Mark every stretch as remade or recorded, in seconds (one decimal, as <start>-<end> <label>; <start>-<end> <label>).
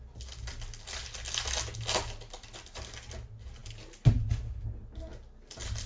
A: 0.0-5.9 recorded